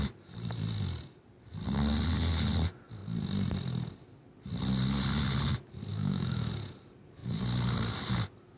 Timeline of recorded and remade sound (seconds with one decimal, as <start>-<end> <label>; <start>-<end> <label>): 0.0-5.9 recorded; 5.9-6.5 remade; 6.5-8.6 recorded